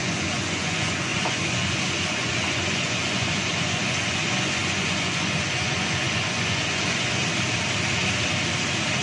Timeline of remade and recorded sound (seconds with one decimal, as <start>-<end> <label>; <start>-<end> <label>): 0.0-7.2 remade; 7.2-9.0 recorded